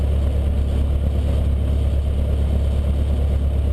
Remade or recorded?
recorded